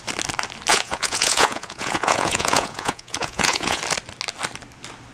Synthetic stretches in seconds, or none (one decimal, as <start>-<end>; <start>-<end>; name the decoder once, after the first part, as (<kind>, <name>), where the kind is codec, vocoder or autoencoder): 0.7-3.8 (vocoder, Vocos)

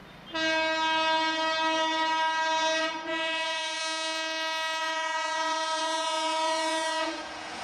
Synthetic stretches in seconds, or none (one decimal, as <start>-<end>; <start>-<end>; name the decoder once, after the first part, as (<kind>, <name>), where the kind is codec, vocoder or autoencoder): 2.8-3.8 (vocoder, Vocos); 4.8-7.6